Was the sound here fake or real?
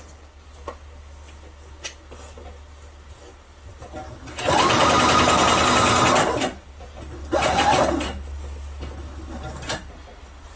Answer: real